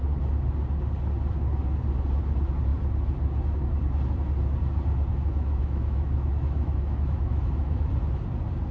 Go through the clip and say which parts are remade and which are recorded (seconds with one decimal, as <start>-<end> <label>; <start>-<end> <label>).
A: 0.0-5.1 recorded; 5.1-7.9 remade; 7.9-8.7 recorded